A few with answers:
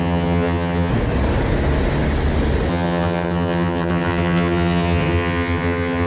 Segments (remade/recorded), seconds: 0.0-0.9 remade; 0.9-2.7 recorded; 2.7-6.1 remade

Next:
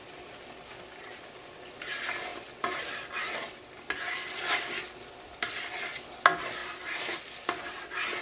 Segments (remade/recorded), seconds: 0.0-8.2 recorded

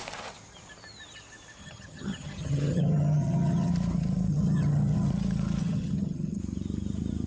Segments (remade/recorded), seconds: 0.0-1.6 recorded; 1.6-3.7 remade; 3.7-4.3 recorded; 4.3-5.1 remade; 5.1-5.6 recorded; 5.6-6.4 remade; 6.4-7.3 recorded

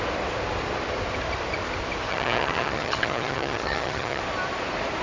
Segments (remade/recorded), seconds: 0.0-2.1 recorded; 2.1-4.2 remade; 4.2-5.0 recorded

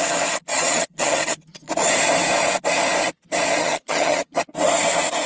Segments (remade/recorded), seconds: 0.0-0.5 recorded; 0.5-1.7 remade; 1.7-3.6 recorded; 3.6-4.4 remade; 4.4-5.3 recorded

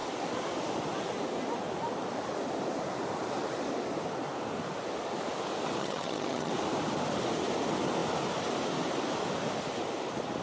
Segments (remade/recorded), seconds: 0.0-5.8 recorded; 5.8-6.5 remade; 6.5-10.4 recorded

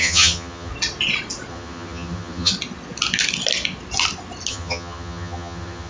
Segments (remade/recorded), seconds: 0.0-0.7 remade; 0.7-1.5 recorded; 1.5-2.5 remade; 2.5-4.5 recorded; 4.5-5.9 remade

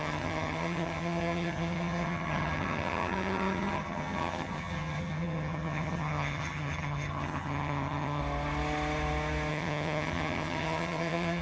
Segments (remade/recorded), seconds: 0.0-8.2 remade; 8.2-9.5 recorded; 9.5-11.4 remade